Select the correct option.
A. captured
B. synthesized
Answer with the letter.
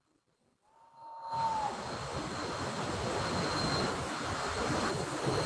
A